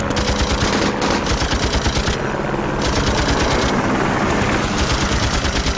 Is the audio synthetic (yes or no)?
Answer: no